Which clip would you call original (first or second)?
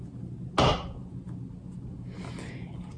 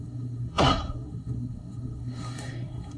first